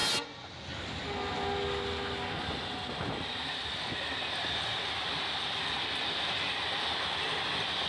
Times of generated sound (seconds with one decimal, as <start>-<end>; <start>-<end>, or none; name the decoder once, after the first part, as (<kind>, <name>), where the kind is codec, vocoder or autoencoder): none

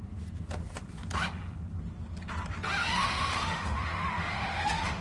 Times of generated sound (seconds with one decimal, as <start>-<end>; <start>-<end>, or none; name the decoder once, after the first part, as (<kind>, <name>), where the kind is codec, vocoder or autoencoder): 2.8-5.0 (autoencoder, DAC-VAE)

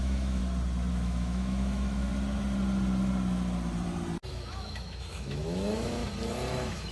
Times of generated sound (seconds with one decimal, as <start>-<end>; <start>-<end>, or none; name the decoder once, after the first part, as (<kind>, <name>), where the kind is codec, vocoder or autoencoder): 0.0-0.4 (autoencoder, DAC-VAE); 0.9-2.1; 4.3-6.0; 6.5-6.9

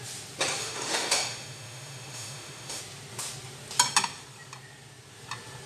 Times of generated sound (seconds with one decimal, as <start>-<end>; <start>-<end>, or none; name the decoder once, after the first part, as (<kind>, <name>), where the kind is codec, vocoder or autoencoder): 0.6-2.8 (autoencoder, DAC-VAE)

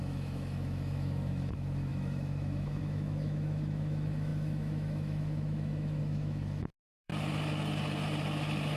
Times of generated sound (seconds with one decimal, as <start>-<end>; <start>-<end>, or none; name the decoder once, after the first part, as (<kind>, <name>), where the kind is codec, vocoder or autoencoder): 0.0-7.1 (autoencoder, DAC-VAE)

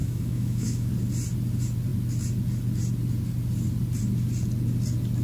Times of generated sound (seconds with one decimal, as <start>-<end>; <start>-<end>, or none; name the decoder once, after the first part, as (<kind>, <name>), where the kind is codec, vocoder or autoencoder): 0.0-0.9 (autoencoder, DAC-VAE)

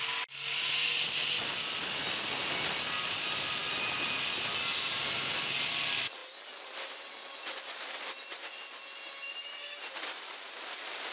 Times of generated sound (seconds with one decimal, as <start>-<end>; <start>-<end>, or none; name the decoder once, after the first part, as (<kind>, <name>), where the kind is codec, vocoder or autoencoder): none